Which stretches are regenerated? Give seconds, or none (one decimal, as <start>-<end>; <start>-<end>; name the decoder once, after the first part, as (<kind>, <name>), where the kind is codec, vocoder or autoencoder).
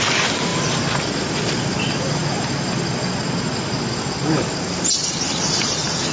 0.5-1.1 (vocoder, BigVGAN v2)